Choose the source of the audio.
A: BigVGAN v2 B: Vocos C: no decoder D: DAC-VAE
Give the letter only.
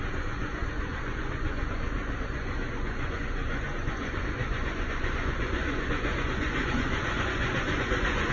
B